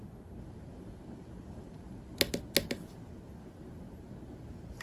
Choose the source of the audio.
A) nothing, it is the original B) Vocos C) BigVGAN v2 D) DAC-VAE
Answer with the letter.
A